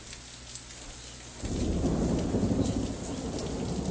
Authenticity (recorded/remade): recorded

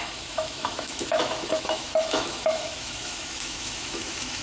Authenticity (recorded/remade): remade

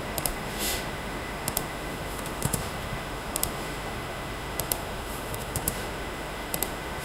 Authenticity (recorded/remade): remade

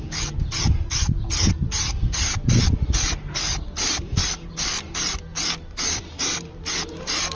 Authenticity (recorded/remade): recorded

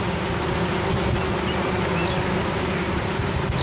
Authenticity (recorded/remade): recorded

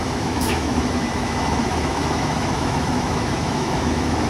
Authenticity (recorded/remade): remade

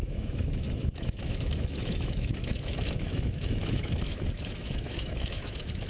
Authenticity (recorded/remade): remade